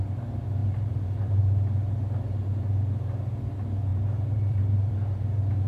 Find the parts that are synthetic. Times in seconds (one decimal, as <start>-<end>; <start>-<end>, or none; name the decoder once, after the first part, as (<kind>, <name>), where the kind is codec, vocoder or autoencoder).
0.6-1.4 (vocoder, BigVGAN v2); 3.9-4.9